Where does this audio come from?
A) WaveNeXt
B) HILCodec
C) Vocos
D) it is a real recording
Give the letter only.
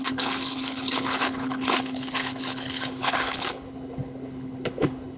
B